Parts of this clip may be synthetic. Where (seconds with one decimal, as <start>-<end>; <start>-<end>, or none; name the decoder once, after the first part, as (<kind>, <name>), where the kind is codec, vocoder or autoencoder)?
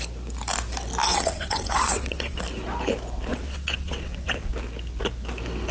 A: 1.1-2.4 (vocoder, WaveNeXt); 3.3-4.5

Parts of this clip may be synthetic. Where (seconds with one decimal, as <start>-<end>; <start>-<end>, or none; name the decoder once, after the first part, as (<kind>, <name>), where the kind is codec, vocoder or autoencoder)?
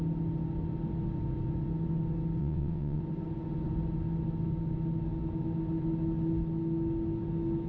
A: 2.4-3.0 (vocoder, WaveNeXt)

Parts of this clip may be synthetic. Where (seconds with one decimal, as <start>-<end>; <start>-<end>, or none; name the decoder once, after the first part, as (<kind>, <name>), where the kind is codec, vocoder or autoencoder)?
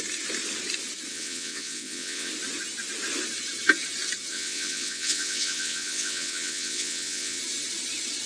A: 1.1-2.3 (vocoder, WaveNeXt); 4.3-7.4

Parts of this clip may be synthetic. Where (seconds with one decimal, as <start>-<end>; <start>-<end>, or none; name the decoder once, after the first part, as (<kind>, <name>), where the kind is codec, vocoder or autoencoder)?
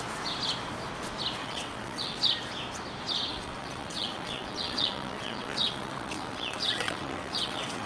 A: 1.4-2.2 (vocoder, WaveNeXt); 3.3-7.9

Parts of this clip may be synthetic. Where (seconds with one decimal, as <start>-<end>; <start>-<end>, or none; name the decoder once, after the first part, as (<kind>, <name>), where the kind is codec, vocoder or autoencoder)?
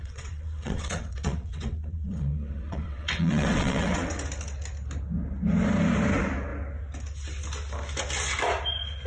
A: 0.0-4.1 (vocoder, WaveNeXt)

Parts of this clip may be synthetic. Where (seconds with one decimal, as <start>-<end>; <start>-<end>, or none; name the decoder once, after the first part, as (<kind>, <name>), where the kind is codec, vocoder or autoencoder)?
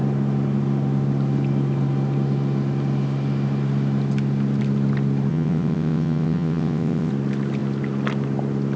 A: 5.3-7.1 (vocoder, WaveNeXt)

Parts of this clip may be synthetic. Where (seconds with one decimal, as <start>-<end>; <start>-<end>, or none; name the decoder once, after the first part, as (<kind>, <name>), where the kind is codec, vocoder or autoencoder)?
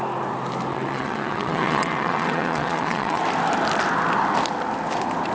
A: 0.7-3.2 (vocoder, WaveNeXt)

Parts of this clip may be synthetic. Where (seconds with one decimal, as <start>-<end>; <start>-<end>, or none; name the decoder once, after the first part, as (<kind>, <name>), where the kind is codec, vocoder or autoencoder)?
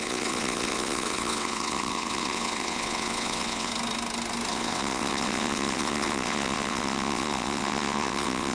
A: 0.0-3.7 (vocoder, WaveNeXt); 4.5-8.5